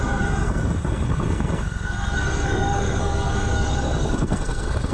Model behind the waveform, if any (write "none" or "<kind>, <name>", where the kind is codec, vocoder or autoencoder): codec, SNAC